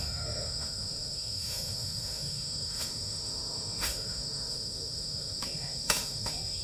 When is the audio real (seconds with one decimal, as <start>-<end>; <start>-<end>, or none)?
none